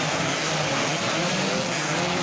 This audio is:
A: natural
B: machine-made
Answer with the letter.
A